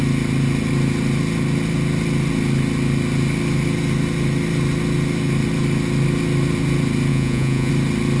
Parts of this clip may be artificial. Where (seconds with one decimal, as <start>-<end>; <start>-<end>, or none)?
7.1-7.7